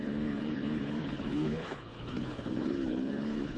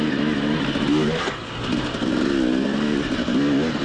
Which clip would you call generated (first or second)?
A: first